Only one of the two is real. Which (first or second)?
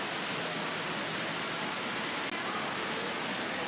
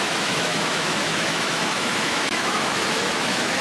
first